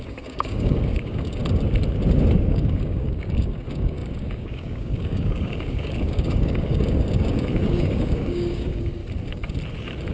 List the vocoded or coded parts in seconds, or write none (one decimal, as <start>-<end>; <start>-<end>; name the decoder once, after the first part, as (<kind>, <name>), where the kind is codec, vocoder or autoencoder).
0.0-1.4 (codec, DAC); 2.5-9.0